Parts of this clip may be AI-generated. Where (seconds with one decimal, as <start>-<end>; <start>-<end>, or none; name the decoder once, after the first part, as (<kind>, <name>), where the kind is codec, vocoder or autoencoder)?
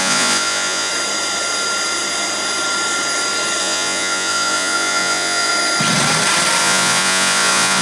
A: 0.0-0.9 (vocoder, Vocos); 3.6-5.5; 6.6-7.8